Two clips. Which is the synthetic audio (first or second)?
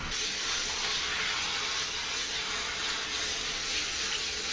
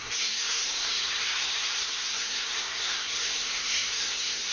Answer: second